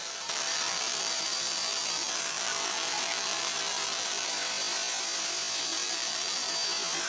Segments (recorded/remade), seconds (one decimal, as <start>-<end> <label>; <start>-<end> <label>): 0.0-4.3 remade; 4.3-5.7 recorded; 5.7-6.5 remade; 6.5-7.1 recorded